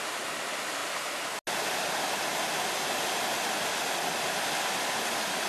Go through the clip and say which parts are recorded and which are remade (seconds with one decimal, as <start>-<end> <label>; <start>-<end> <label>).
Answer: 0.0-5.5 recorded